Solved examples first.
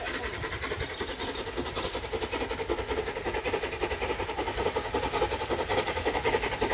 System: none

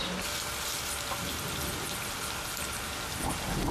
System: none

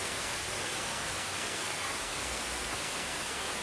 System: codec, SNAC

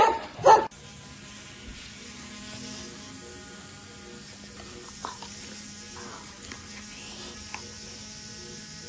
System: none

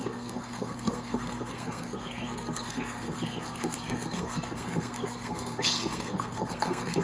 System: codec, SNAC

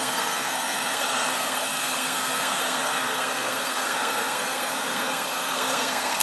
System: codec, SNAC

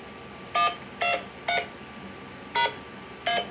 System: none